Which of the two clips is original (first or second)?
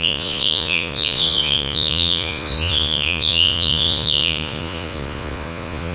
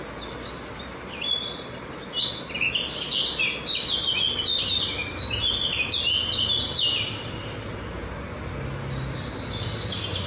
second